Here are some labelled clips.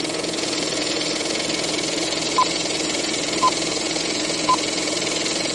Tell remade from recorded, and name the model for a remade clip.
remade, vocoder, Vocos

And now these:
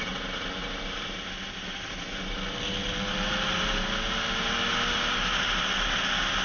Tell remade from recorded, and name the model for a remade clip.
recorded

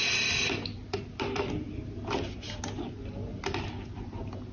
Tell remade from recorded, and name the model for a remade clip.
recorded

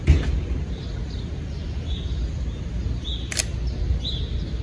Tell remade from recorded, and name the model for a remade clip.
recorded